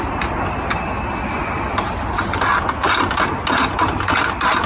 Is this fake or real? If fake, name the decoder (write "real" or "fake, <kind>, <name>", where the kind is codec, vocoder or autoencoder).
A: real